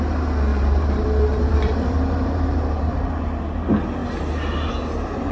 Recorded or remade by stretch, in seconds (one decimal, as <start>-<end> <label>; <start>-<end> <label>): 0.0-0.5 recorded; 0.5-2.8 remade; 2.8-5.3 recorded